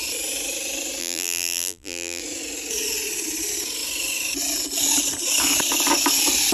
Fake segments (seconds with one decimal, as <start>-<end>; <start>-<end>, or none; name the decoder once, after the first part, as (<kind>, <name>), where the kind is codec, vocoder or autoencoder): 1.0-2.2 (vocoder, BigVGAN v2)